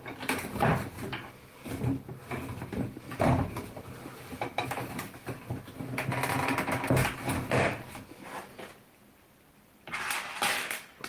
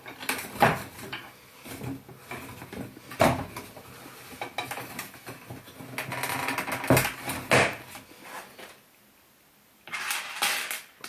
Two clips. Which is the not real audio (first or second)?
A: first